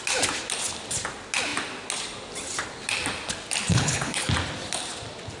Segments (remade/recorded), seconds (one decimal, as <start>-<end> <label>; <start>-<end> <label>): 0.0-3.7 recorded; 3.7-4.3 remade; 4.3-5.4 recorded